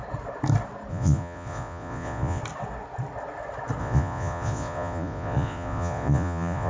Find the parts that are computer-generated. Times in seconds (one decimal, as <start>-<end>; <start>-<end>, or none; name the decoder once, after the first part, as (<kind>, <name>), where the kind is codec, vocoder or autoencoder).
0.9-2.4 (vocoder, Vocos); 3.8-6.7